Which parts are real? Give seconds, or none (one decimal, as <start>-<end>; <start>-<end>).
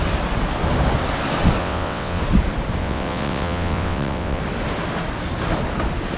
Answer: 0.0-1.6; 2.2-2.8; 4.4-6.2